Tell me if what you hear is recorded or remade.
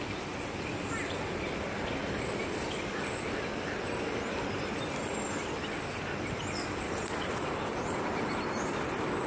recorded